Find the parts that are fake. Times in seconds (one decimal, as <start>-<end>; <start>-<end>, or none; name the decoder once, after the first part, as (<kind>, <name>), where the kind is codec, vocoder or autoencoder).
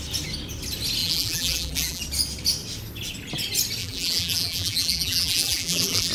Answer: 1.0-2.0 (vocoder, BigVGAN v2); 3.8-6.1